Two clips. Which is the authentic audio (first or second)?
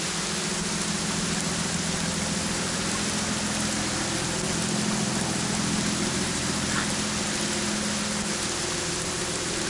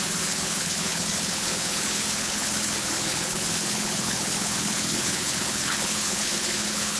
first